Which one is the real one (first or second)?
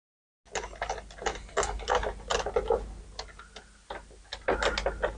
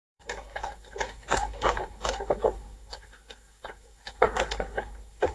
first